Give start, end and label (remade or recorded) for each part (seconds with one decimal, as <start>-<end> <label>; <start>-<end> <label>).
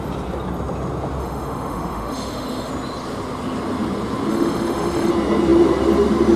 0.0-1.2 recorded; 1.2-2.7 remade; 2.7-4.3 recorded; 4.3-5.1 remade; 5.1-6.4 recorded